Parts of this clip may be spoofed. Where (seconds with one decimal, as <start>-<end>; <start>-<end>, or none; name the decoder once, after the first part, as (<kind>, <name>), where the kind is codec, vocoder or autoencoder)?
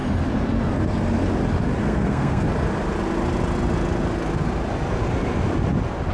1.8-2.4 (codec, SNAC)